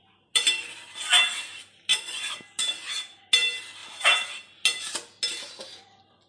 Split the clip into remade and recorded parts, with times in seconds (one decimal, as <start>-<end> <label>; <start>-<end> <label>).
0.0-1.9 recorded; 1.9-2.4 remade; 2.4-6.3 recorded

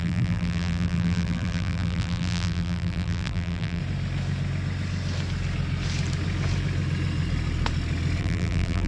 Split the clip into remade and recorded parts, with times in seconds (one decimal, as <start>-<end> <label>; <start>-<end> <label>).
0.0-3.8 remade; 3.8-8.2 recorded; 8.2-8.9 remade

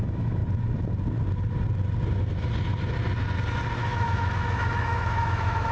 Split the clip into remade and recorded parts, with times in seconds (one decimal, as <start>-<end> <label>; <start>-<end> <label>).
0.0-0.4 remade; 0.4-3.8 recorded; 3.8-5.7 remade

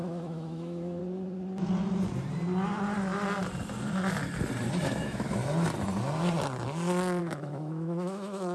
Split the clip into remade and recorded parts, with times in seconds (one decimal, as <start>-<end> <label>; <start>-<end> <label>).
0.0-1.0 remade; 1.0-5.0 recorded; 5.0-5.4 remade; 5.4-7.2 recorded; 7.2-8.5 remade

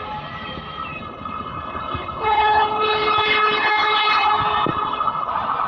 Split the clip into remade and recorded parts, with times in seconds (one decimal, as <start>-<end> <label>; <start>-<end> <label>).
0.0-0.9 recorded; 0.9-4.3 remade; 4.3-4.7 recorded; 4.7-5.3 remade; 5.3-5.7 recorded